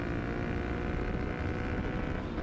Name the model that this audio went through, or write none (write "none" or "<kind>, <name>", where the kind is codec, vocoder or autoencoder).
none